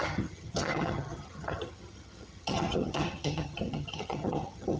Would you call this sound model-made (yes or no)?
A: yes